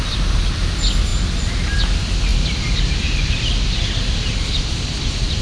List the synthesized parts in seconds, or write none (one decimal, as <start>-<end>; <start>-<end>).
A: none